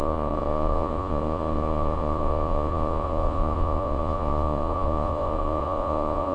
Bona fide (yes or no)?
no